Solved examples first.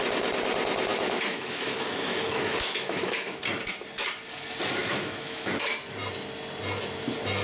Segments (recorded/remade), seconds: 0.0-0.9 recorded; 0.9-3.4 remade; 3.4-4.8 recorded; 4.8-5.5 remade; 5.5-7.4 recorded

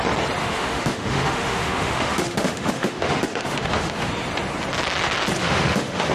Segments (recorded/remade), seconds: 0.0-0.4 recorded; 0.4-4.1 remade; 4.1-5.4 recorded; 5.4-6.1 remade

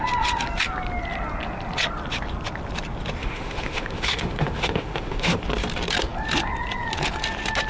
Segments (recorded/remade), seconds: 0.0-3.2 recorded; 3.2-5.4 remade; 5.4-7.7 recorded

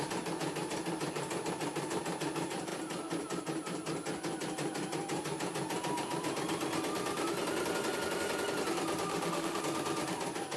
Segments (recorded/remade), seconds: 0.0-9.1 recorded; 9.1-9.6 remade; 9.6-10.6 recorded